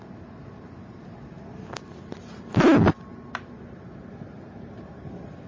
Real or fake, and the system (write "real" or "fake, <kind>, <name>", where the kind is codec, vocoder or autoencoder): real